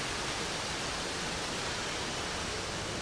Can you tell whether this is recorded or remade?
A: recorded